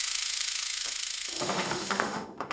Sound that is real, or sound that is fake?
fake